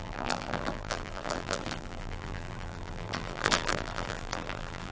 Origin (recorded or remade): remade